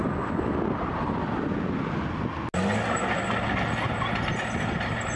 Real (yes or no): yes